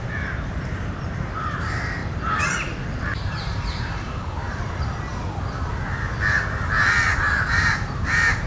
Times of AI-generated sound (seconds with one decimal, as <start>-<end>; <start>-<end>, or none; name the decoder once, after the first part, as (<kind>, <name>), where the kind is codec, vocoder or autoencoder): 0.0-2.0 (vocoder, BigVGAN v2); 3.0-5.1; 7.3-8.5